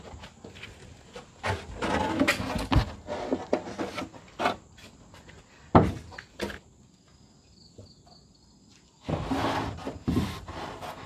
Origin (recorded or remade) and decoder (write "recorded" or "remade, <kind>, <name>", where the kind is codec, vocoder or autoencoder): recorded